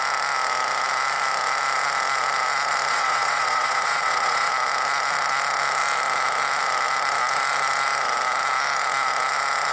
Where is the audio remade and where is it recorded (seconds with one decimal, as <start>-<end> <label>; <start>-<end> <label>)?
0.0-2.9 recorded; 2.9-4.5 remade; 4.5-9.7 recorded